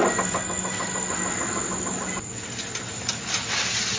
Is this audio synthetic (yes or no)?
no